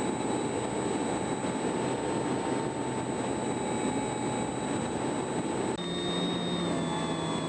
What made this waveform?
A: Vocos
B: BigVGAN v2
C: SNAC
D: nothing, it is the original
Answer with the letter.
D